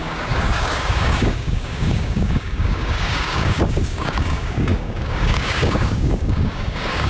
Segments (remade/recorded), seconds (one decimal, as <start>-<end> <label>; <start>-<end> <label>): 0.0-7.1 remade